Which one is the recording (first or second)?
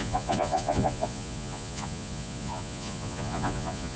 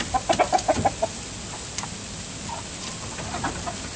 second